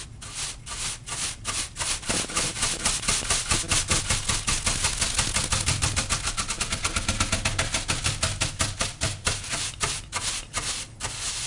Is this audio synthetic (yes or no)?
no